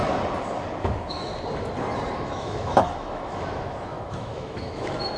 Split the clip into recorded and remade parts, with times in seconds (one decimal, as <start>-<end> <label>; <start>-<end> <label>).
0.0-0.8 recorded; 0.8-1.3 remade; 1.3-2.1 recorded; 2.1-5.2 remade